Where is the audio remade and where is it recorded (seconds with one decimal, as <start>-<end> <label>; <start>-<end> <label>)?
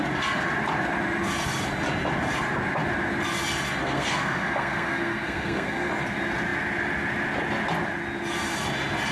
0.0-3.8 recorded; 3.8-5.9 remade; 5.9-9.1 recorded